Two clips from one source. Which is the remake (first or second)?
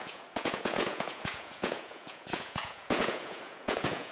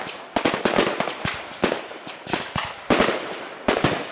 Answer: first